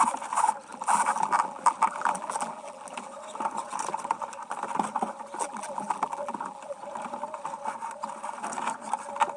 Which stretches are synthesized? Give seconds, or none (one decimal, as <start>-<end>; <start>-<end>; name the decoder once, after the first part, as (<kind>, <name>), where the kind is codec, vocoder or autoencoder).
0.7-3.1 (vocoder, BigVGAN v2); 5.4-6.8